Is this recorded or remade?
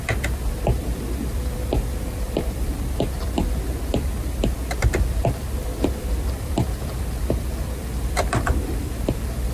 remade